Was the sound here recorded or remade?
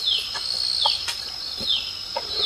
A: recorded